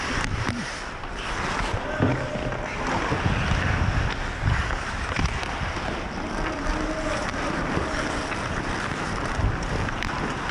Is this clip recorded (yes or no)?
yes